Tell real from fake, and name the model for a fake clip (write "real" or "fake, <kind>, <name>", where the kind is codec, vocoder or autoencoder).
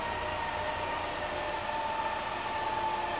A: real